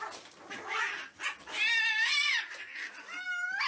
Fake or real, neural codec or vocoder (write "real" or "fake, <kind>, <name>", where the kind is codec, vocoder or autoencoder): real